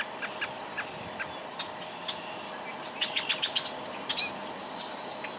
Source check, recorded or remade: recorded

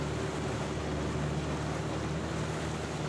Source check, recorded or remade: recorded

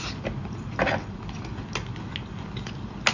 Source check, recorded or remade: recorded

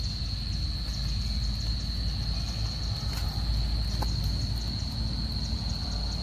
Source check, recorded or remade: recorded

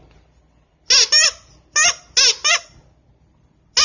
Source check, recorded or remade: recorded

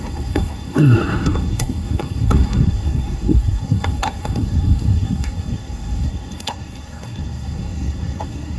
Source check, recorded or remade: remade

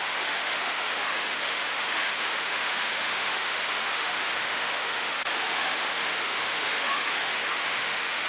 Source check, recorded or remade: remade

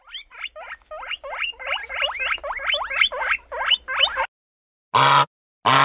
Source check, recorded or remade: recorded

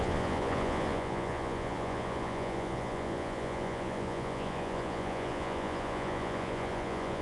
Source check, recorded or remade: remade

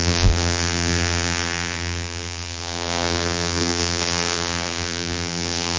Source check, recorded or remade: remade